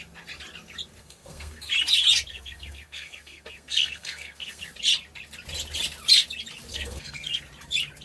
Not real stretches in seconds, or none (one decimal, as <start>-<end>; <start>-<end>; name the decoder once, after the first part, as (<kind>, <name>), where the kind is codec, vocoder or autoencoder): 1.0-1.7 (codec, SNAC); 2.3-4.6; 6.7-7.4